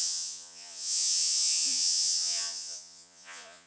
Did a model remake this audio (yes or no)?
yes